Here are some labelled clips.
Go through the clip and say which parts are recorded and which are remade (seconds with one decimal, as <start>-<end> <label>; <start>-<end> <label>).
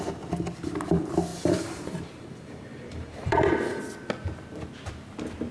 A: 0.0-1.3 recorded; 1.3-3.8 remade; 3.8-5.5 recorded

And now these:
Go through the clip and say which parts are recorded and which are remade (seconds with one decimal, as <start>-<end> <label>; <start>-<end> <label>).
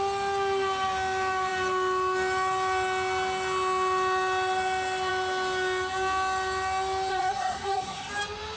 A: 0.0-7.1 recorded; 7.1-8.1 remade; 8.1-8.6 recorded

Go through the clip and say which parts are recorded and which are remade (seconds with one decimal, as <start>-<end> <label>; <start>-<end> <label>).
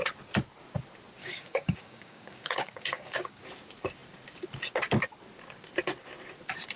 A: 0.0-1.2 recorded; 1.2-3.4 remade; 3.4-6.8 recorded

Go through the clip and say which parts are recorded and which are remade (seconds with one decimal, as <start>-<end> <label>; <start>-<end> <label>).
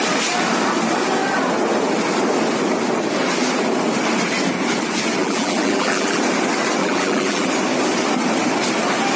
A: 0.0-5.2 recorded; 5.2-6.2 remade; 6.2-6.8 recorded; 6.8-7.5 remade; 7.5-9.2 recorded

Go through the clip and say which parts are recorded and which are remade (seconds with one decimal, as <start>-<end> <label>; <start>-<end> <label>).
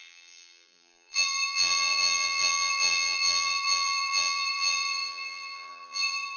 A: 0.0-6.4 remade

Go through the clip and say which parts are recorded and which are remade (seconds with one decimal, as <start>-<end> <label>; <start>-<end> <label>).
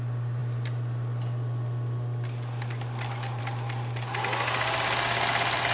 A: 0.0-5.7 recorded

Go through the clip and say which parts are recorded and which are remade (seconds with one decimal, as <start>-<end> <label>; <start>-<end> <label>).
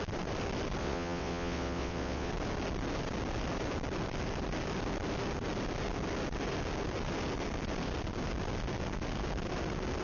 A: 0.0-0.8 recorded; 0.8-2.3 remade; 2.3-10.0 recorded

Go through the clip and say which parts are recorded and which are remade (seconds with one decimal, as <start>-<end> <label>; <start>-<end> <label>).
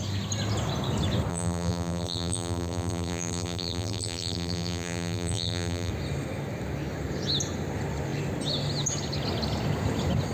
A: 0.0-1.3 recorded; 1.3-5.9 remade; 5.9-10.3 recorded